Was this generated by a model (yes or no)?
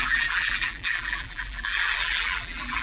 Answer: yes